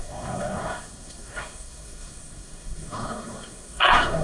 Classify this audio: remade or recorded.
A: remade